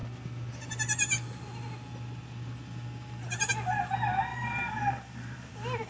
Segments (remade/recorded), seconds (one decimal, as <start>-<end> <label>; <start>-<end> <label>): 0.0-4.3 recorded; 4.3-5.9 remade